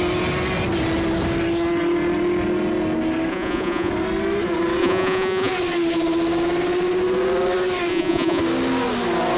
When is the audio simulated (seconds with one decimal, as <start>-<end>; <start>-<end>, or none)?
3.3-3.9; 4.8-5.5; 7.9-8.4